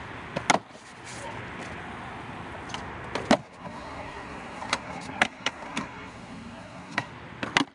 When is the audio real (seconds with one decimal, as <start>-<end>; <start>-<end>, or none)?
0.0-3.4; 7.1-7.7